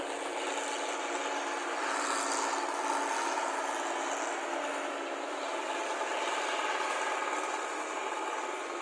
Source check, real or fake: real